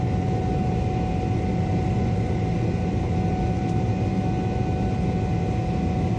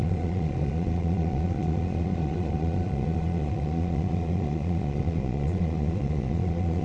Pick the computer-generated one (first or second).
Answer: second